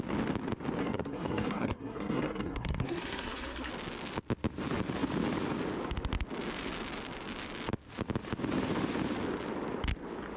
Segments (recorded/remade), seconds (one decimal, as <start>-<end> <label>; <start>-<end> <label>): 0.0-0.8 recorded; 0.8-3.7 remade; 3.7-10.4 recorded